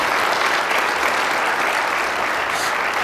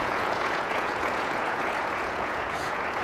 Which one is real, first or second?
first